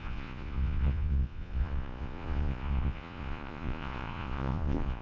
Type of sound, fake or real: fake